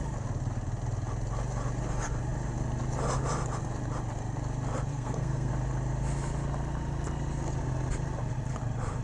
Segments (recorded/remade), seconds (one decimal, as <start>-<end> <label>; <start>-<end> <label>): 0.0-4.9 recorded; 4.9-5.5 remade; 5.5-9.0 recorded